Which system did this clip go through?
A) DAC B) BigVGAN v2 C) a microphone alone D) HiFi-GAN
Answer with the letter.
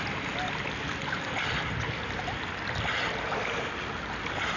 C